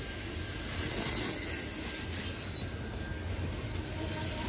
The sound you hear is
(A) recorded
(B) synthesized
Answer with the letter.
A